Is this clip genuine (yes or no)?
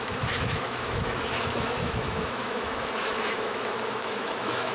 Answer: no